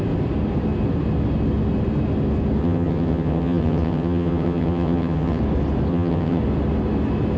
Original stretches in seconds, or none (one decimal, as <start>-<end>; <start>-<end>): 0.0-2.6; 5.4-5.9; 6.4-7.4